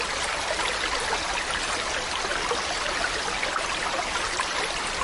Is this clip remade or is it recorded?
recorded